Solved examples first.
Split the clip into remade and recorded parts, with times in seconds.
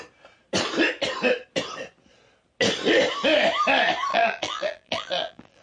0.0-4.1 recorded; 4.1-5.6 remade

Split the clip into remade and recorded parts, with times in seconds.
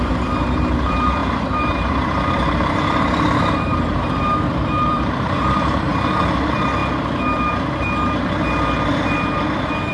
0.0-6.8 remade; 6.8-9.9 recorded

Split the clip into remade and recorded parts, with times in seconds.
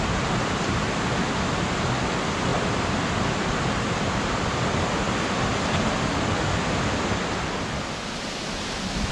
0.0-9.1 recorded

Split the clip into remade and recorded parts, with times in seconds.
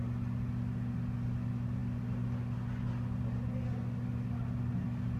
0.0-5.2 recorded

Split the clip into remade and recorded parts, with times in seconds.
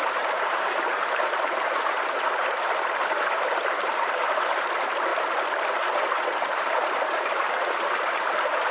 0.0-5.1 remade; 5.1-6.1 recorded; 6.1-8.7 remade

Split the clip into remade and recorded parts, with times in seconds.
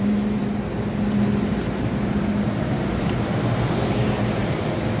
0.0-0.4 remade; 0.4-1.6 recorded; 1.6-2.3 remade; 2.3-3.0 recorded; 3.0-5.0 remade